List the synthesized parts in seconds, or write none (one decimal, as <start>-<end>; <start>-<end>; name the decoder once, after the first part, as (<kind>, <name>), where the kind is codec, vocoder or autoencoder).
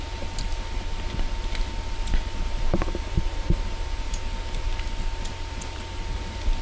none